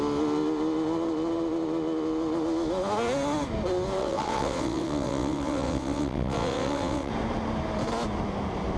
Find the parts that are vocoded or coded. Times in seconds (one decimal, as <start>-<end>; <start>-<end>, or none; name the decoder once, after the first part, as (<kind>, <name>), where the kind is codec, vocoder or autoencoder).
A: 4.0-7.1 (vocoder, WaveNeXt)